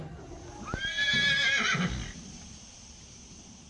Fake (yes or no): no